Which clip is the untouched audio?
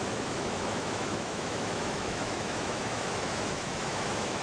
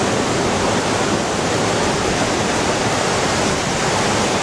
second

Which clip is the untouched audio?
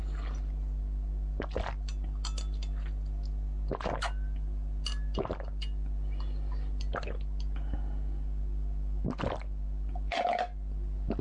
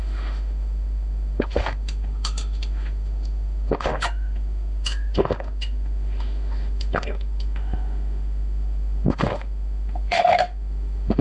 first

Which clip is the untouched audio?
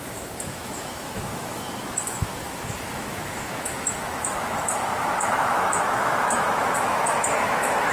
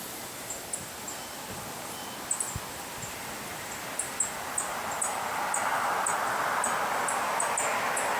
second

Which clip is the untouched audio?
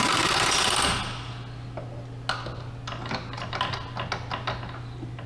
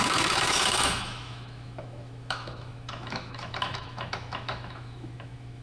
first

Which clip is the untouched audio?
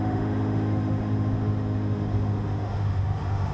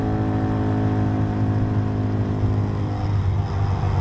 second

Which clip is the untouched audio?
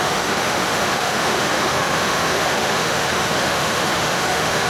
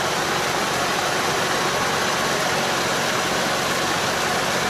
second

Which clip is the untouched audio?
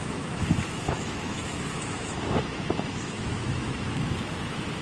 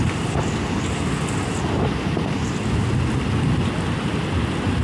second